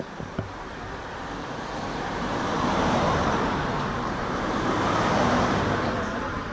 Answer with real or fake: fake